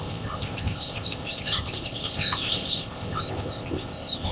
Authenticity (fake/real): fake